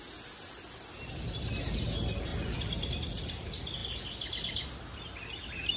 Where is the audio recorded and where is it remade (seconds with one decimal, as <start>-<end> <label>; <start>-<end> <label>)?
0.0-5.8 recorded